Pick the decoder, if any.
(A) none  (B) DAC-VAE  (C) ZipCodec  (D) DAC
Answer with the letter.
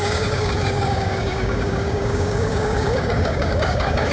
D